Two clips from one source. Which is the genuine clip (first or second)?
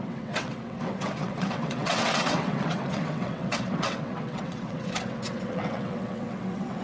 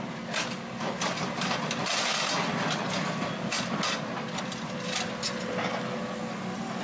second